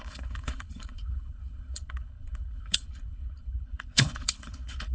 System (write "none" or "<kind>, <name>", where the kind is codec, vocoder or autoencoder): codec, HILCodec